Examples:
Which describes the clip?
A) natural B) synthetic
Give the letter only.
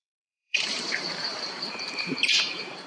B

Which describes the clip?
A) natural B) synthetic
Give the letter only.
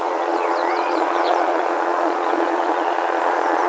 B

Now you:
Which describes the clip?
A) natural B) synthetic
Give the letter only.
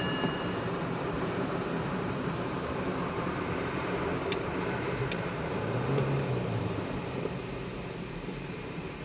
B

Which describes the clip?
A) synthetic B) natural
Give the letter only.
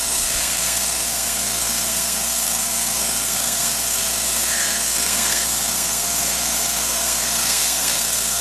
A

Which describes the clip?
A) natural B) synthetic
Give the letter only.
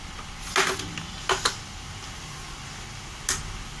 A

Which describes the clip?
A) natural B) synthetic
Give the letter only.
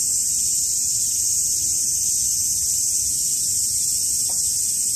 A